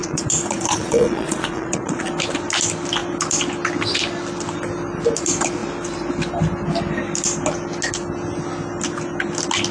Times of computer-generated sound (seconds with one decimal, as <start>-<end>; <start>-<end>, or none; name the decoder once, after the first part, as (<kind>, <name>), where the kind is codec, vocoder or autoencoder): 0.0-2.1 (vocoder, Vocos)